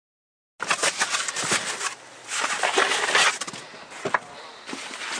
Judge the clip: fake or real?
real